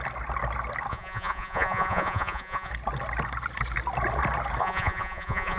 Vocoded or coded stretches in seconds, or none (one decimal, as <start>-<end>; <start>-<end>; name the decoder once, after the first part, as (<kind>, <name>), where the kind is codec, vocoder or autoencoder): 0.9-2.7 (vocoder, Vocos); 4.6-5.6